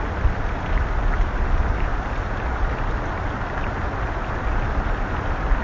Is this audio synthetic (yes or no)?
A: no